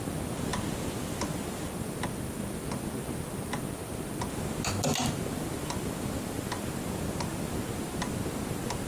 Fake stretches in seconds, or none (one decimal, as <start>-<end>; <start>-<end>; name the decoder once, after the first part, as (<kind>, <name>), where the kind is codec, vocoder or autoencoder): none